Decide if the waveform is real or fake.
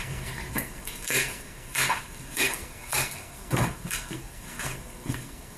fake